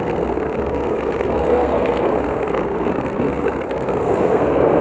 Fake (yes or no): yes